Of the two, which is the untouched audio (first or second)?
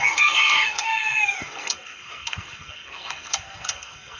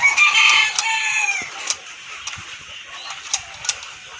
second